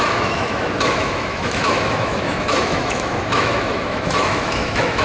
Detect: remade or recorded remade